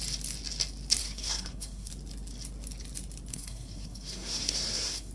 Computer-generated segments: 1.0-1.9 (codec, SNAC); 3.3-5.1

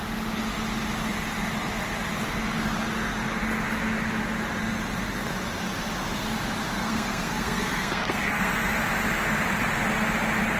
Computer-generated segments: 6.7-8.7 (codec, SNAC)

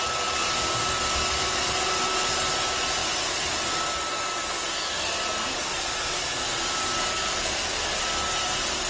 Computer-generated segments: none

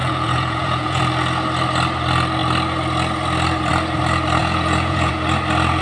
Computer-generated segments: 0.0-1.0 (vocoder, Vocos); 4.4-5.1

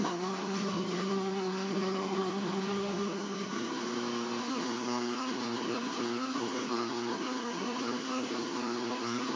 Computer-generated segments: 0.0-3.8 (codec, SNAC); 4.4-9.4